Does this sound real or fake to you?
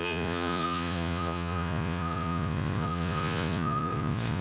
fake